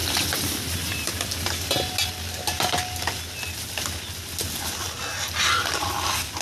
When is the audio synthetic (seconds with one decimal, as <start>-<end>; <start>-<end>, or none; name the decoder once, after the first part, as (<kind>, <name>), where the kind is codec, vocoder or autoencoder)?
0.0-1.7 (vocoder, BigVGAN v2)